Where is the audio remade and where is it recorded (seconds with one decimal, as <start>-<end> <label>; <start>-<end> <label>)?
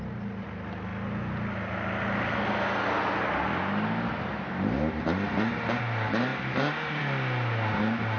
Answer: 0.0-8.2 recorded